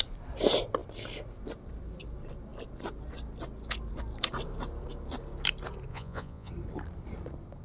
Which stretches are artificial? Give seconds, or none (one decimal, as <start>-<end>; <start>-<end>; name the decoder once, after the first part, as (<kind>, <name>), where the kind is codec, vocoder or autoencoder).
5.9-6.5 (vocoder, Vocos)